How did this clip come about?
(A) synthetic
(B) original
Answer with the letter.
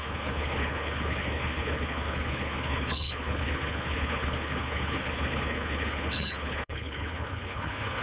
A